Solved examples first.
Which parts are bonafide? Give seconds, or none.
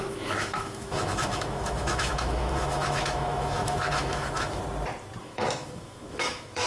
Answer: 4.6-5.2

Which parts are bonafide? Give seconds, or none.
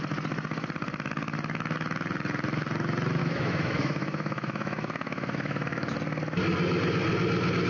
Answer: 0.0-3.2; 5.9-7.7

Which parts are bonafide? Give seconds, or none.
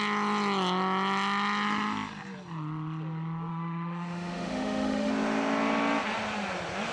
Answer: 0.0-3.5; 5.1-6.9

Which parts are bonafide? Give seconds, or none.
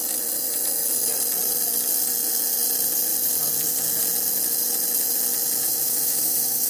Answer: 0.0-5.6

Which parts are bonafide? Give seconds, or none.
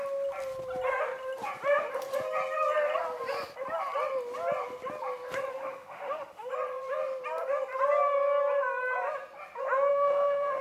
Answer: 0.0-5.5; 6.5-9.9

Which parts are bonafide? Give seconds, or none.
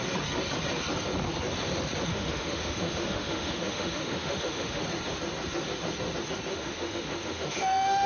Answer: 0.0-2.1; 4.8-6.5